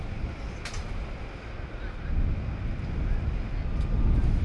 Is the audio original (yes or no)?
yes